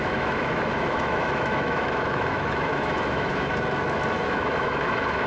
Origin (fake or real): fake